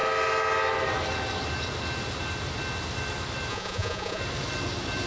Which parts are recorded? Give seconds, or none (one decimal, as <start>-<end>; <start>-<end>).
0.0-3.5; 4.2-5.1